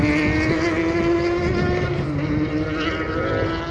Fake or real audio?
real